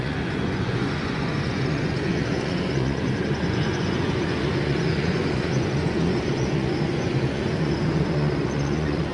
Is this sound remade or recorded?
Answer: remade